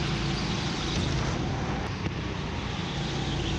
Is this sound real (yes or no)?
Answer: yes